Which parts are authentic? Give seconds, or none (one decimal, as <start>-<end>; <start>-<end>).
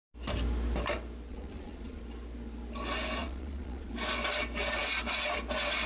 0.0-1.3; 2.0-3.2; 3.9-5.9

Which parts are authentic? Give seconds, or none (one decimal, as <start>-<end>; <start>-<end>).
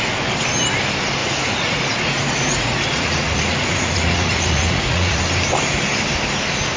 0.0-1.2; 5.2-6.8